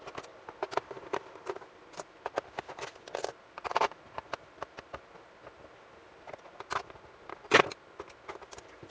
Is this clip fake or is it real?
real